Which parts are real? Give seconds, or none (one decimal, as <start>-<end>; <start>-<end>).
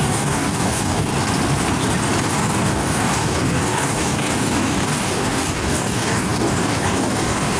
1.1-2.2